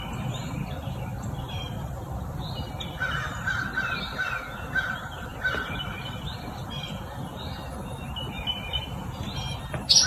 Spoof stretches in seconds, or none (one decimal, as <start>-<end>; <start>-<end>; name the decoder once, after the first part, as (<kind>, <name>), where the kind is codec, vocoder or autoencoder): 5.3-7.0 (vocoder, BigVGAN v2); 8.2-9.6